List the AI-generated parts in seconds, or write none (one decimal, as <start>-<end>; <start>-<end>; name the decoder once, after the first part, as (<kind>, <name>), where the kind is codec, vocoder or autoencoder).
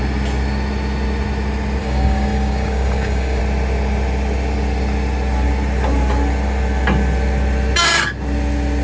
1.8-3.4 (codec, DAC)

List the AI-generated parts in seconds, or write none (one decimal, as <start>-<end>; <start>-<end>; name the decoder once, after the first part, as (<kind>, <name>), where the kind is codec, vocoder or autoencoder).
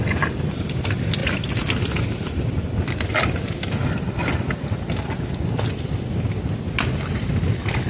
none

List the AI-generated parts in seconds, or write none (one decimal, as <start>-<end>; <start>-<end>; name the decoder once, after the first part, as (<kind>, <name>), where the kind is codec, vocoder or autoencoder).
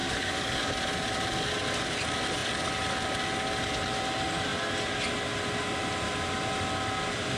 0.0-0.7 (codec, DAC)